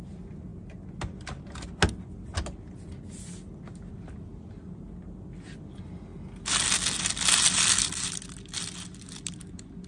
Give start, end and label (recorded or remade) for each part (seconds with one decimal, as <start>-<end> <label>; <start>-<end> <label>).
0.0-9.9 recorded